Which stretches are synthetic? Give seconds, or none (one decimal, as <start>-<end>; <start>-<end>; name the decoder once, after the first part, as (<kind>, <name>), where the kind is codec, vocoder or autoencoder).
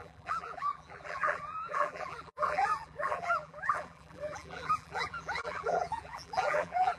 0.0-7.0 (vocoder, BigVGAN v2)